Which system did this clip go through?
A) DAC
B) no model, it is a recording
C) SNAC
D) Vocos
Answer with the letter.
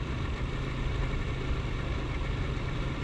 B